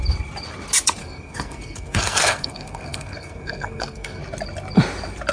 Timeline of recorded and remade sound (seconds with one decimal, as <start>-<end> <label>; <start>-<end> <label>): 0.0-1.0 recorded; 1.0-4.2 remade; 4.2-5.3 recorded

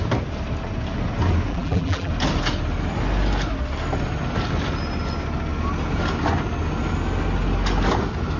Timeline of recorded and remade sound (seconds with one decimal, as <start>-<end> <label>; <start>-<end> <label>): 0.0-1.5 recorded; 1.5-2.1 remade; 2.1-8.4 recorded

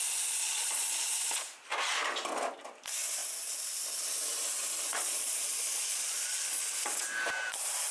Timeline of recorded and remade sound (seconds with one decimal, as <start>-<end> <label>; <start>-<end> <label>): 0.0-0.4 recorded; 0.4-1.1 remade; 1.1-4.9 recorded; 4.9-6.6 remade; 6.6-7.9 recorded

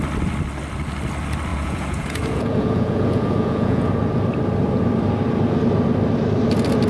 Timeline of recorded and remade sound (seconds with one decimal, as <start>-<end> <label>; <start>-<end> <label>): 0.0-1.5 recorded; 1.5-3.9 remade; 3.9-6.9 recorded